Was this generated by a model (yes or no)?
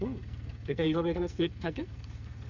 yes